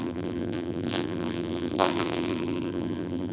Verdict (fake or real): fake